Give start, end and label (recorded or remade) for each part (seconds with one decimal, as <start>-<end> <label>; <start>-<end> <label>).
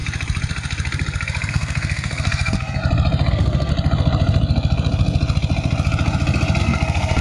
0.0-1.5 recorded; 1.5-2.8 remade; 2.8-3.3 recorded; 3.3-3.7 remade; 3.7-6.6 recorded; 6.6-7.2 remade